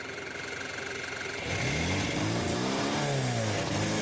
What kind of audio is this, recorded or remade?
recorded